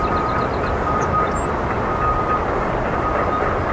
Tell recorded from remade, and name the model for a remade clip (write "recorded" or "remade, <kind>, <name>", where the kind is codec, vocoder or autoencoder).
recorded